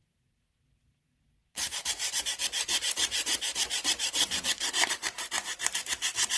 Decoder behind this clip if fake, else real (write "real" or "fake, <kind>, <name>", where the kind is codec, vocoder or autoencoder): fake, vocoder, BigVGAN v2